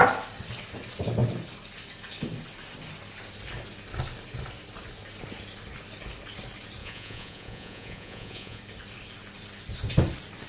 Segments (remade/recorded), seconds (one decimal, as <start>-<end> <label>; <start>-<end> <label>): 0.0-6.8 recorded; 6.8-8.6 remade; 8.6-10.5 recorded